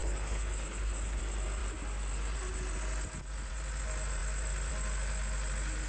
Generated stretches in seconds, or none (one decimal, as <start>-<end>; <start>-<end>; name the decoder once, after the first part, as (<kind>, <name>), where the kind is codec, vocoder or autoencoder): 0.0-1.2 (codec, HILCodec)